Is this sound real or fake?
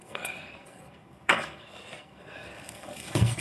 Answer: fake